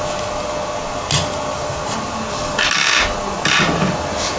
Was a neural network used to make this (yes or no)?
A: no